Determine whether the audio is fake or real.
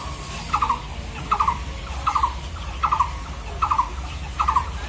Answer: real